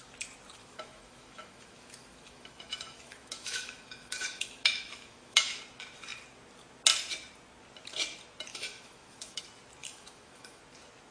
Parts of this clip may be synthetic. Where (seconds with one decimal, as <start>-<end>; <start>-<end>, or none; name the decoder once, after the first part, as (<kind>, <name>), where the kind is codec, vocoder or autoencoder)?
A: 0.6-5.6 (autoencoder, DAC-VAE); 8.5-9.4; 9.8-10.6